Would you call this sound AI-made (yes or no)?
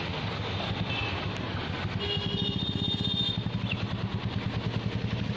no